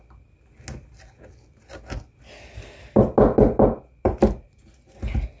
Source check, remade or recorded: recorded